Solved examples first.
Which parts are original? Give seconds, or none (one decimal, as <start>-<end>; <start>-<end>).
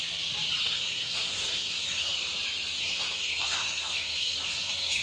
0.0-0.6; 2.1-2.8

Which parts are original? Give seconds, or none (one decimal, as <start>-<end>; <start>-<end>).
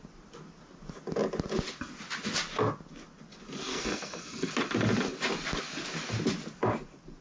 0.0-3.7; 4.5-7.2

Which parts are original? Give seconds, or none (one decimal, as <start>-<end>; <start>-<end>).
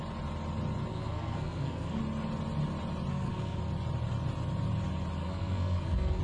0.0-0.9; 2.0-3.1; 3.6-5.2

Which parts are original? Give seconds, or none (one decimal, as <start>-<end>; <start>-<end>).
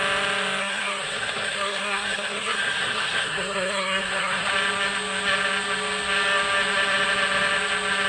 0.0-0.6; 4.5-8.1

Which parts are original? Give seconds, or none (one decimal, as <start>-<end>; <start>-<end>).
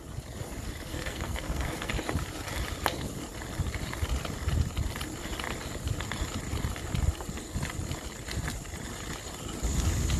0.0-0.9; 1.9-10.2